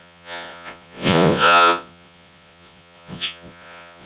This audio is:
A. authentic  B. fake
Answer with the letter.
B